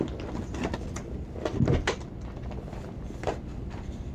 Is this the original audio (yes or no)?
yes